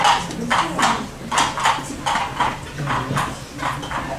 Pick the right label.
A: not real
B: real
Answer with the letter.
B